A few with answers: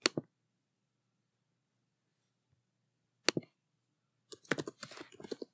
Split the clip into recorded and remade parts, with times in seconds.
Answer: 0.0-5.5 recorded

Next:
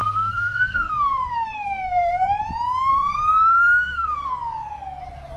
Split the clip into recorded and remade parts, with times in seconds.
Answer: 0.0-2.3 remade; 2.3-2.9 recorded; 2.9-4.3 remade; 4.3-5.4 recorded

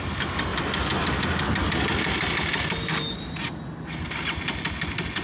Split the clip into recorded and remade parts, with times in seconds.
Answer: 0.0-5.2 recorded

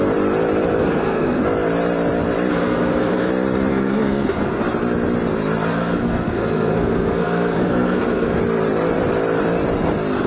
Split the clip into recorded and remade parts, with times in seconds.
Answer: 0.0-0.8 recorded; 0.8-1.4 remade; 1.4-2.5 recorded; 2.5-3.3 remade; 3.3-3.7 recorded; 3.7-4.6 remade; 4.6-5.7 recorded; 5.7-8.4 remade; 8.4-10.3 recorded

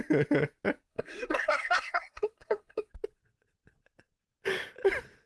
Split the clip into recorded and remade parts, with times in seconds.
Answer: 0.0-0.9 recorded; 0.9-2.9 remade; 2.9-5.3 recorded

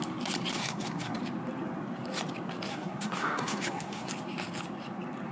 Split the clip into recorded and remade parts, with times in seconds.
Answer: 0.0-0.5 recorded; 0.5-1.2 remade; 1.2-2.7 recorded; 2.7-4.1 remade; 4.1-5.3 recorded